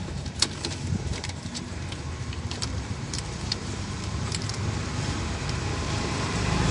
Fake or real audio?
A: fake